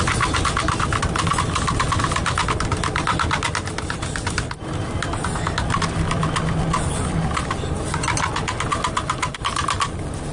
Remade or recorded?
recorded